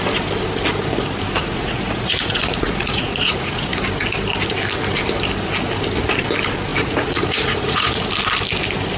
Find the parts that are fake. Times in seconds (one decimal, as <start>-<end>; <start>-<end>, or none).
1.4-3.7; 6.7-8.0